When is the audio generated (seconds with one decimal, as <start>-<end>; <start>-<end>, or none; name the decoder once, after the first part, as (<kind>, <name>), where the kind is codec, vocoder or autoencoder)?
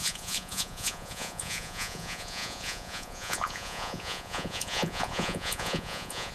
0.0-6.3 (vocoder, Vocos)